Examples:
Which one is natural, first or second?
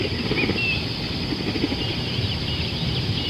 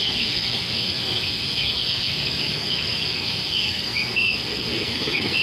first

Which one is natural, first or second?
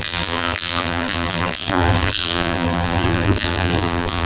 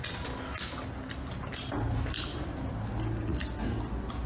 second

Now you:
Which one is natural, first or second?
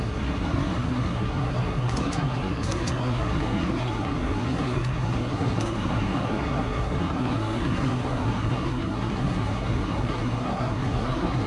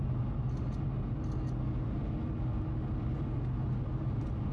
second